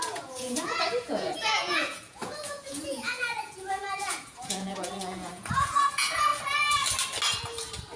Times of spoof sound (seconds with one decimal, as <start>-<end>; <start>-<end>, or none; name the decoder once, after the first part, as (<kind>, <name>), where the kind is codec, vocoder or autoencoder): 0.0-6.3 (vocoder, Vocos)